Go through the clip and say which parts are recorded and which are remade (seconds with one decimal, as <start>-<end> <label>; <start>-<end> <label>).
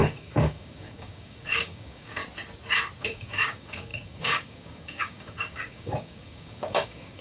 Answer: 0.0-2.2 remade; 2.2-3.0 recorded; 3.0-7.2 remade